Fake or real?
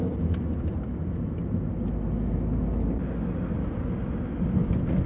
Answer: real